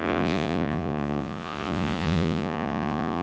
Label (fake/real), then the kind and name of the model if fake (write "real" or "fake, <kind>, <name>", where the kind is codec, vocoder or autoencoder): fake, vocoder, Vocos